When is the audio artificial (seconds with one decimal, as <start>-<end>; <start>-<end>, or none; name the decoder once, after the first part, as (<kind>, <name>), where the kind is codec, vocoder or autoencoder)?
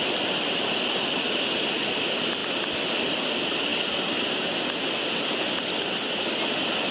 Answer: none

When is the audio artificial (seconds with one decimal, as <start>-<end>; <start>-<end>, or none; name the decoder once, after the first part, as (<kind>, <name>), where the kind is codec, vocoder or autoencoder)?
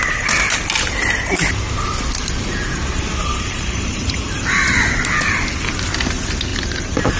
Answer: 3.2-4.4 (vocoder, BigVGAN v2); 6.5-7.2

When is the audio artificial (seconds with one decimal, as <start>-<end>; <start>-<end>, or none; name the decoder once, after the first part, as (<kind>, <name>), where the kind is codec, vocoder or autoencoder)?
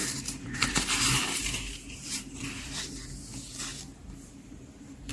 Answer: 0.0-3.1 (vocoder, BigVGAN v2); 3.7-5.1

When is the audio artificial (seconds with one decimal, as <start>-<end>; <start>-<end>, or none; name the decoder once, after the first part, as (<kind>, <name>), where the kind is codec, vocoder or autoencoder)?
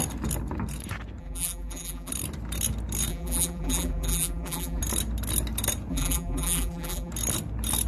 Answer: 1.2-2.1 (vocoder, BigVGAN v2); 3.1-4.8; 5.9-7.1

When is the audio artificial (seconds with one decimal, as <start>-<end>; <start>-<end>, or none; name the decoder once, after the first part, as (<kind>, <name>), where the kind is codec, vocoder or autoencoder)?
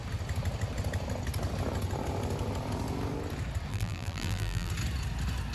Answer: 3.7-4.7 (vocoder, BigVGAN v2)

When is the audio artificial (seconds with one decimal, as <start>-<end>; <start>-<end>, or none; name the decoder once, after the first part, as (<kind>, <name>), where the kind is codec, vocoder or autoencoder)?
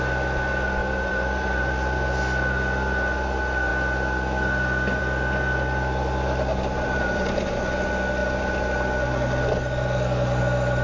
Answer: 0.8-2.2 (vocoder, BigVGAN v2); 6.5-7.5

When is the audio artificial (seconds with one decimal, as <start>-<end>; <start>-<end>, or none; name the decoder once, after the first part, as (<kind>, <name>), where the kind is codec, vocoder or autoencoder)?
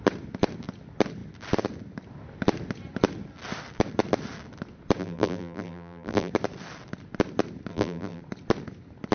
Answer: 5.0-6.3 (vocoder, BigVGAN v2); 7.7-8.2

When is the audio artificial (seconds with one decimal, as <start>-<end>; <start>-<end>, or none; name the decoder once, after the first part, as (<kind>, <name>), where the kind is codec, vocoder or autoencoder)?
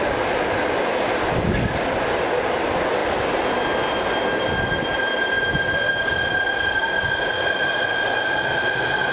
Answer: none